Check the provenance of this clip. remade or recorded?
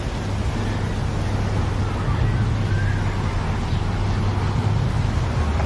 recorded